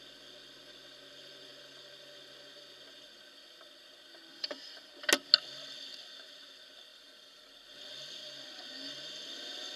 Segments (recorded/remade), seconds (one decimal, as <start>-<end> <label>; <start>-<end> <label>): 0.0-4.3 recorded; 4.3-4.9 remade; 4.9-6.9 recorded; 6.9-7.5 remade; 7.5-9.8 recorded